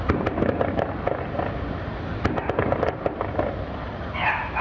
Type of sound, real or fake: real